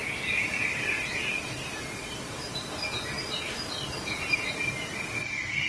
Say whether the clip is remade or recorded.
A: recorded